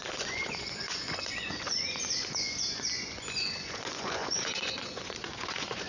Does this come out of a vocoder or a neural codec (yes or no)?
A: yes